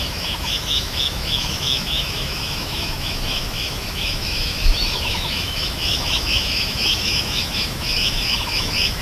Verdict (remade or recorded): remade